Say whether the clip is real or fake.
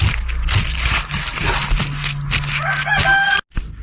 real